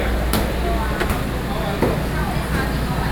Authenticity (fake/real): real